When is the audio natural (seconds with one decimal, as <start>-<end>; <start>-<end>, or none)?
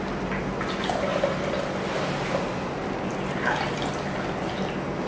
0.0-5.1